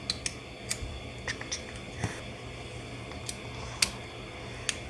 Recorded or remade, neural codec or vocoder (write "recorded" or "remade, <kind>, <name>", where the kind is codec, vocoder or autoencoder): recorded